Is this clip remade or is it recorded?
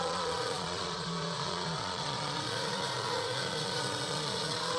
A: remade